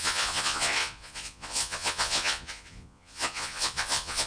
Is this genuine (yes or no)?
no